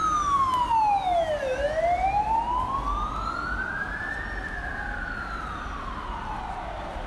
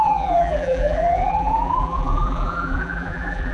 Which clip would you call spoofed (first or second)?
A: second